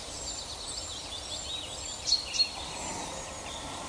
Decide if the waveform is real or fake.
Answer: real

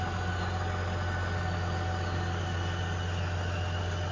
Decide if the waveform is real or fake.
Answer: real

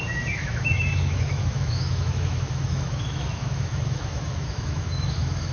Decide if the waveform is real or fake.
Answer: fake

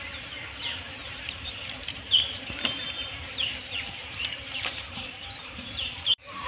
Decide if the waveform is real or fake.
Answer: fake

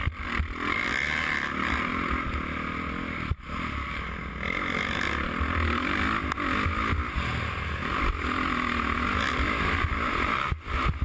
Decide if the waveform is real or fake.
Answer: real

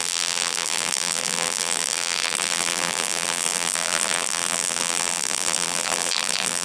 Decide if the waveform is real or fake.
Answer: fake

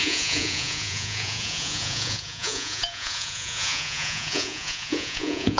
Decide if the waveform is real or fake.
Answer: fake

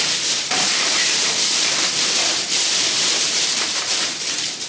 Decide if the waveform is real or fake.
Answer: fake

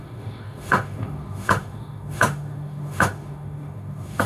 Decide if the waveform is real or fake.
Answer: fake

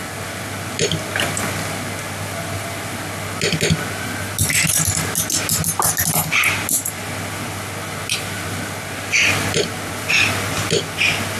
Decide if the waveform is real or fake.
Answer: real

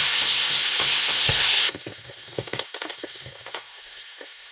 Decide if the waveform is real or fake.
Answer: fake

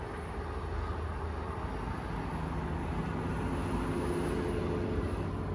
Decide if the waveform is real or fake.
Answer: real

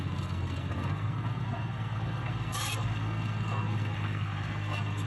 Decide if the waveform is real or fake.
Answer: fake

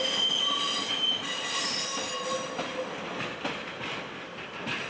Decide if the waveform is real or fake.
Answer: real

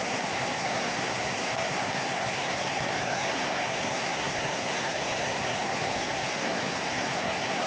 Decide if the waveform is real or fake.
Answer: fake